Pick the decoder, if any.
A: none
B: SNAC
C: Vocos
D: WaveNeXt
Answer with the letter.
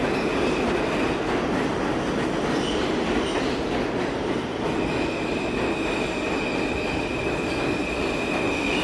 A